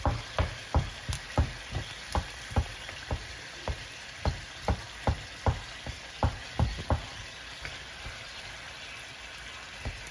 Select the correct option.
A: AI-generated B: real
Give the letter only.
B